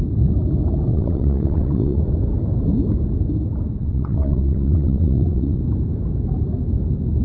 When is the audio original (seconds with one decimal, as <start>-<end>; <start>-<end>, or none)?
0.0-0.9; 2.0-3.8; 5.6-7.2